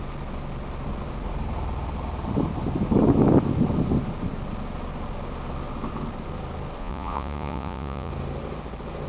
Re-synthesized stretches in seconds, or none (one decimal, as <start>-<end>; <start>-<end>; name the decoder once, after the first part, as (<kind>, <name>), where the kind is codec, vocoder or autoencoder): 6.8-8.1 (vocoder, Vocos)

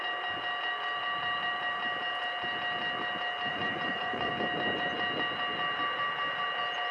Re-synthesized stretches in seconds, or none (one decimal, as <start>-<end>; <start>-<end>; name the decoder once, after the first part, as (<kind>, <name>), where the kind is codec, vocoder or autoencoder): 3.5-4.3 (vocoder, Vocos)

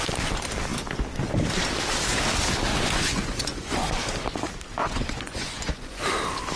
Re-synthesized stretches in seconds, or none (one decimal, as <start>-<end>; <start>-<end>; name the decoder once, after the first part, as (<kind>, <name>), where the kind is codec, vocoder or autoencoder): 2.7-4.0 (vocoder, Vocos); 4.8-6.0

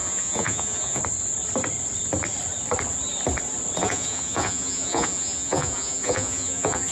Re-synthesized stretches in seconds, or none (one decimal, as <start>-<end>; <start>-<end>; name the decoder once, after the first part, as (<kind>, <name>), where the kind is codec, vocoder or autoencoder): 0.0-1.0 (vocoder, Vocos); 3.8-6.9

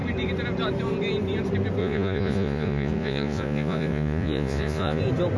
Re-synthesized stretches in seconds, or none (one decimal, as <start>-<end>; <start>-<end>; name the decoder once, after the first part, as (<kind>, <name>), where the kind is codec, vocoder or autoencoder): 1.8-5.0 (vocoder, Vocos)

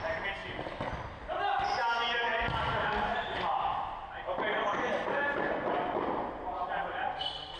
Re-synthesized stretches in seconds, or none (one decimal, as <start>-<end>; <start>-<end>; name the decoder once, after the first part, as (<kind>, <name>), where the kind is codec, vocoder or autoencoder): none